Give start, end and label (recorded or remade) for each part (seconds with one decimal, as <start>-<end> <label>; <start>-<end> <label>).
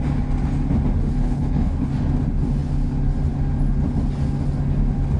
0.0-1.2 recorded; 1.2-1.9 remade; 1.9-5.2 recorded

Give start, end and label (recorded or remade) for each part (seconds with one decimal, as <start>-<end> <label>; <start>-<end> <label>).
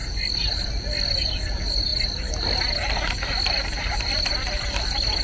0.0-5.2 recorded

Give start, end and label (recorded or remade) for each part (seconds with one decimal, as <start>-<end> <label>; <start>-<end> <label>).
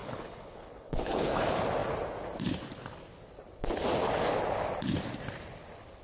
0.0-1.4 remade; 1.4-6.0 recorded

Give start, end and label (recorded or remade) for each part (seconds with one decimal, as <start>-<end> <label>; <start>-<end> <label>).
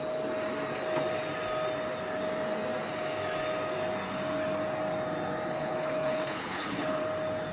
0.0-5.6 recorded; 5.6-7.0 remade; 7.0-7.5 recorded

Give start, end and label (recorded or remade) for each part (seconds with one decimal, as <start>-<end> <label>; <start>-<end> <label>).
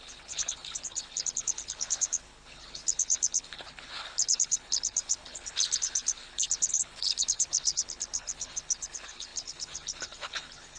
0.0-10.8 remade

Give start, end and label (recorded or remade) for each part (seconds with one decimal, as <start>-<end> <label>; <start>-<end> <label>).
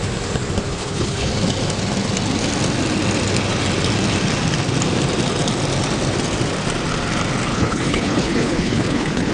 0.0-0.7 recorded; 0.7-1.3 remade; 1.3-7.5 recorded; 7.5-9.3 remade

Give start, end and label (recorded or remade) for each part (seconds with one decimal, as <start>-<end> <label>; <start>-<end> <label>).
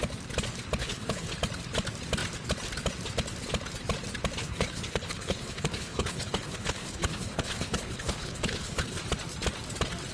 0.0-0.8 recorded; 0.8-1.3 remade; 1.3-4.4 recorded; 4.4-9.0 remade; 9.0-10.1 recorded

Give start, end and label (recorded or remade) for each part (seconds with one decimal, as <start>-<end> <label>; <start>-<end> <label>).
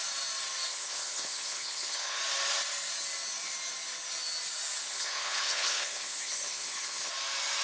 0.0-0.7 recorded; 0.7-2.2 remade; 2.2-4.8 recorded; 4.8-7.1 remade; 7.1-7.6 recorded